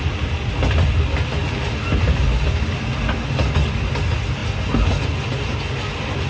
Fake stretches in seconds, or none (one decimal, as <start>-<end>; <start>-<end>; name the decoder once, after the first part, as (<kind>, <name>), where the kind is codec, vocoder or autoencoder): none

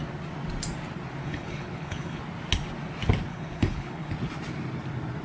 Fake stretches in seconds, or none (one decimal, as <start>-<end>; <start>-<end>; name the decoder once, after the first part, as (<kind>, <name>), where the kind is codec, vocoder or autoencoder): 1.2-2.2 (codec, HILCodec); 3.3-4.1